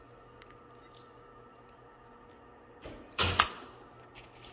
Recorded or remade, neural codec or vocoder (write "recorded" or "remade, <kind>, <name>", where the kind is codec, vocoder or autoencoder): recorded